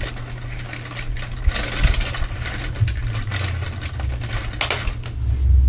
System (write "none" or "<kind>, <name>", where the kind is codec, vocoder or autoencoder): none